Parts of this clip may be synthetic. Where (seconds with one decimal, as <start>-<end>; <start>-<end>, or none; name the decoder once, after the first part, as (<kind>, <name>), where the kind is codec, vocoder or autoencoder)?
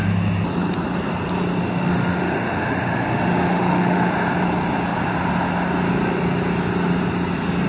1.6-4.1 (autoencoder, DAC-VAE)